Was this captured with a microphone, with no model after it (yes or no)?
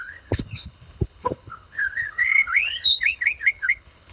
no